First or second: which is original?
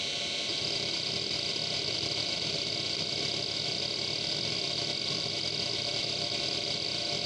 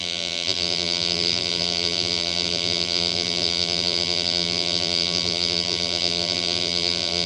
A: first